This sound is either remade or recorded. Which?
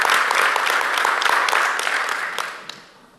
recorded